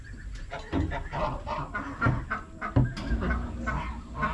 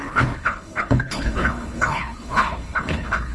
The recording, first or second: first